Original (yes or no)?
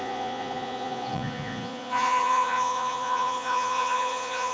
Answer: no